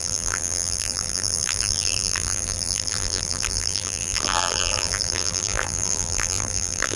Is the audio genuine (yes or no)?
no